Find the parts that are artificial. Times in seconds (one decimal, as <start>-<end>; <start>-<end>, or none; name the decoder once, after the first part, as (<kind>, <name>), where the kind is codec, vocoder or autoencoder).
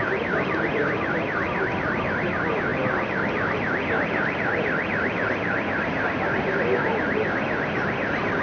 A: none